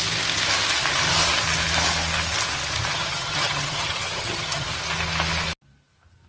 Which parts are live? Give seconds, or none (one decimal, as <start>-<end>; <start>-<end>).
0.0-2.9; 4.7-6.3